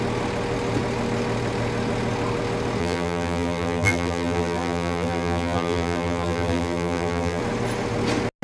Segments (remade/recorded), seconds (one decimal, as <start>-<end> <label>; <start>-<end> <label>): 0.0-2.8 recorded; 2.8-7.4 remade; 7.4-8.4 recorded